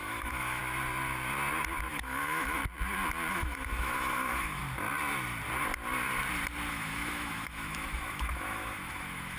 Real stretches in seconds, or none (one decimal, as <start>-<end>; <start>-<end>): 0.6-1.9; 2.6-3.3; 4.6-6.7